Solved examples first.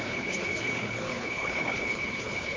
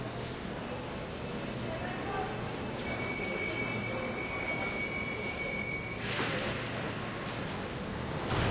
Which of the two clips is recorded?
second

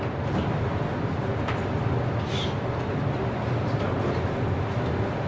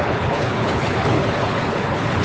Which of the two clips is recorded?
first